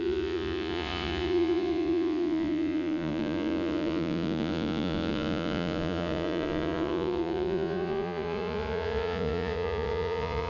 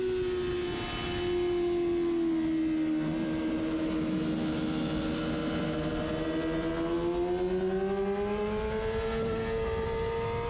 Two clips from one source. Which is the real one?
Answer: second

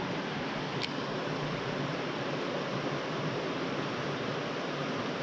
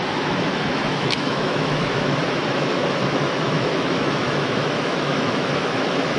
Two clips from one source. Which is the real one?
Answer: first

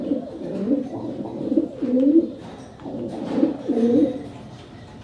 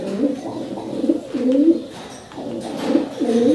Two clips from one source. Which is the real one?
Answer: second